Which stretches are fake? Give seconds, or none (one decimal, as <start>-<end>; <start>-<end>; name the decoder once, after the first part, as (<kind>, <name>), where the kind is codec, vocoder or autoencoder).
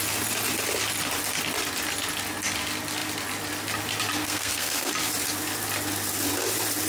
4.2-4.9 (codec, SNAC)